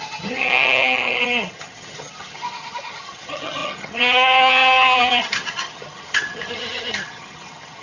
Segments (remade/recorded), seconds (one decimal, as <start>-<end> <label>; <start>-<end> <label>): 0.0-7.8 remade